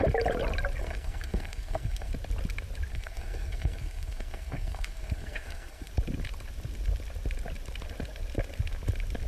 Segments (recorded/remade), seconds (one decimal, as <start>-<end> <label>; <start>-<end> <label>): 0.0-0.8 recorded; 0.8-2.1 remade; 2.1-2.9 recorded; 2.9-5.9 remade; 5.9-9.3 recorded